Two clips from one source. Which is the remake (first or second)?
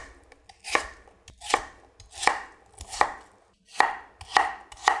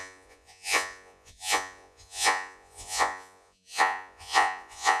second